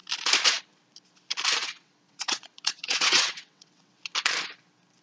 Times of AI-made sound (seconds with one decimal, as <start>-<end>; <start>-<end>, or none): 1.6-4.0

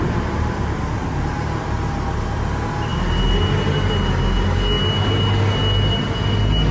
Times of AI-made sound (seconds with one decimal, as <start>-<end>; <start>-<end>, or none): none

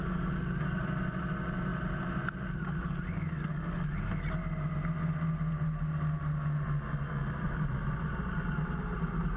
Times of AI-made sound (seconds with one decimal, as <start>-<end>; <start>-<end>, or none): none